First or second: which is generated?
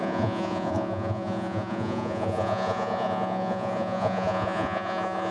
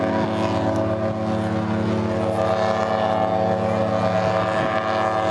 first